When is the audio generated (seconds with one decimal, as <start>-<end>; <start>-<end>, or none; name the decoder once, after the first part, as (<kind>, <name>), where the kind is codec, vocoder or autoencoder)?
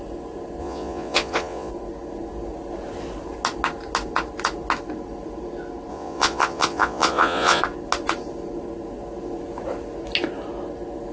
0.6-1.7 (vocoder, Vocos); 5.9-7.6